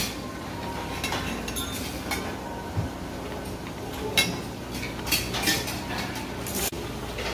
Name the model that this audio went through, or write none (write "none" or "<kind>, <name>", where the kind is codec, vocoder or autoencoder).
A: none